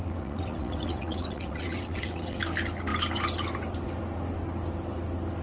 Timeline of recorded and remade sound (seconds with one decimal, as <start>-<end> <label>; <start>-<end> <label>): 0.0-2.4 remade; 2.4-5.4 recorded

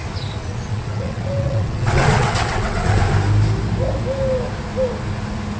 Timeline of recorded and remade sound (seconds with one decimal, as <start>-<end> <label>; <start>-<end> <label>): 0.0-0.4 recorded; 0.4-3.0 remade; 3.0-5.6 recorded